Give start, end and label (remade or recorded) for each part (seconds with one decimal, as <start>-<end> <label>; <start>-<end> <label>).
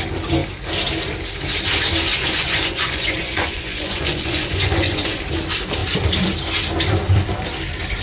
0.0-2.1 recorded; 2.1-5.2 remade; 5.2-8.0 recorded